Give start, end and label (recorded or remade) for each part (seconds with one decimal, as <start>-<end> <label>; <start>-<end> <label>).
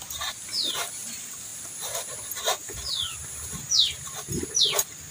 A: 0.0-5.1 recorded